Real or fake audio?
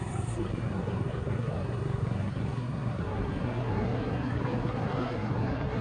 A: fake